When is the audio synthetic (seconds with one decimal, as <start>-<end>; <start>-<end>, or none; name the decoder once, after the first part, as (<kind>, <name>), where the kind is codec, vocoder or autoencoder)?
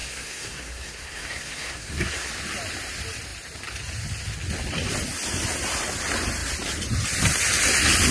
0.0-2.3 (codec, SNAC)